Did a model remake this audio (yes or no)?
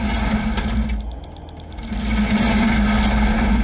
no